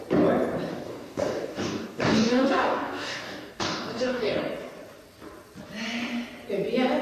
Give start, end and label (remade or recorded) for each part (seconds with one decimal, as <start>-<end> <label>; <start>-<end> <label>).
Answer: 0.0-0.7 recorded; 0.7-4.4 remade; 4.4-7.0 recorded